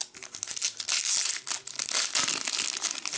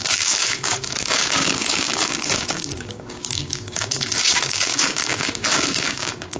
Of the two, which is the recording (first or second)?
first